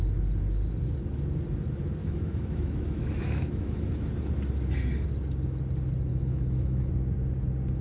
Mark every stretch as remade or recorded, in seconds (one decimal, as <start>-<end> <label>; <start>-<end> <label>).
0.0-2.0 recorded; 2.0-3.9 remade; 3.9-6.1 recorded; 6.1-6.9 remade; 6.9-7.8 recorded